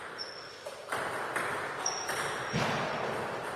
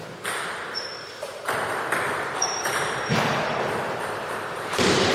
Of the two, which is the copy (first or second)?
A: second